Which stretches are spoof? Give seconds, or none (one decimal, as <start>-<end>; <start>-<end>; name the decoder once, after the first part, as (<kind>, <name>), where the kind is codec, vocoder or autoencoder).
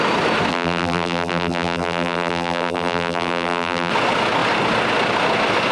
0.5-3.9 (vocoder, BigVGAN v2)